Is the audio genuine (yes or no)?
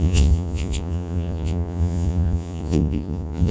no